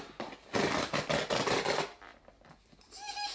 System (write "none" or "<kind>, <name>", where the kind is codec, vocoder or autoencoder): none